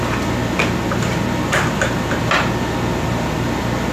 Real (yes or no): yes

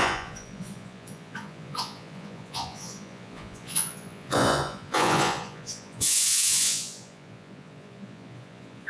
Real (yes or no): no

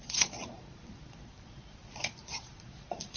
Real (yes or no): no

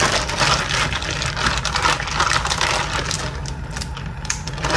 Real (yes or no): yes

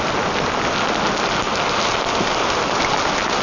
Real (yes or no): yes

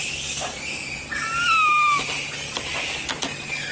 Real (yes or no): yes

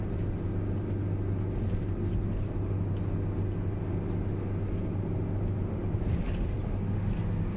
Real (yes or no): yes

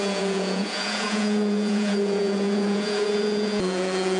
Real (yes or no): no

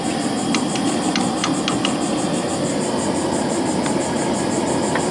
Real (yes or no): yes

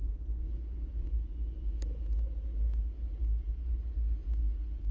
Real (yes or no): yes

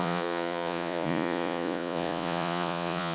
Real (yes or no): no